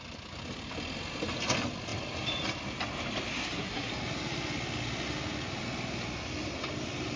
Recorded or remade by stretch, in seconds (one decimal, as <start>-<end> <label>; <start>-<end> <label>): 0.0-3.3 recorded; 3.3-3.9 remade; 3.9-7.2 recorded